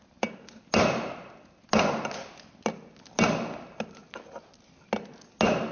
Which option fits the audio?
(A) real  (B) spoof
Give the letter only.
A